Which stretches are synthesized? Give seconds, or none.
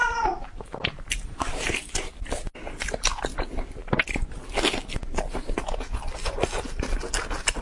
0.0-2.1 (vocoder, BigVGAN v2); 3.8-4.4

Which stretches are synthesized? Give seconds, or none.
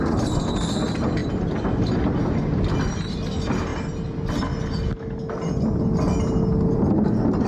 0.0-3.7 (vocoder, BigVGAN v2); 6.7-7.5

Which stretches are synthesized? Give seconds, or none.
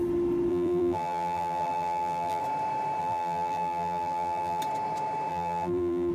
0.5-2.4 (vocoder, BigVGAN v2); 3.0-4.6; 5.3-6.1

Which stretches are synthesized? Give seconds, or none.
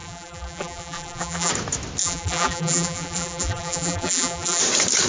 0.0-1.5 (vocoder, BigVGAN v2); 2.0-4.6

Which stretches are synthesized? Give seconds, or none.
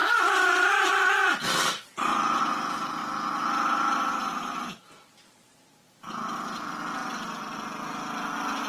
none